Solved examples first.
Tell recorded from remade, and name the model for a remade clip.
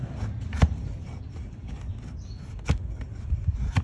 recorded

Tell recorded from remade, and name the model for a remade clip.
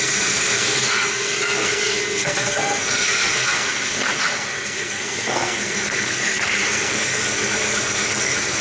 remade, codec, SNAC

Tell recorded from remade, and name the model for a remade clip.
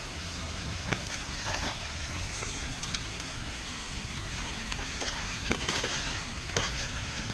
remade, codec, SNAC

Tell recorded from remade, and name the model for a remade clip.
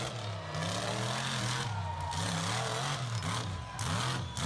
recorded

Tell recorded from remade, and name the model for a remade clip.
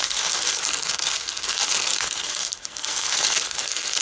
remade, codec, SNAC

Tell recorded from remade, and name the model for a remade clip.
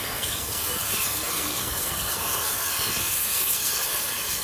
remade, codec, SNAC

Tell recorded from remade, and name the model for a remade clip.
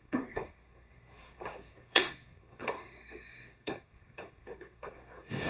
remade, codec, SNAC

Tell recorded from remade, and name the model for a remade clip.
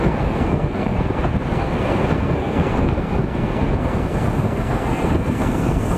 remade, codec, SNAC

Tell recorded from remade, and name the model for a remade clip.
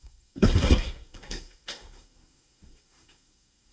remade, codec, SNAC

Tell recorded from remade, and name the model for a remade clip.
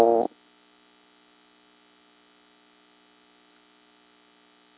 recorded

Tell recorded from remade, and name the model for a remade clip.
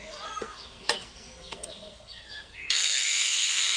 remade, codec, SNAC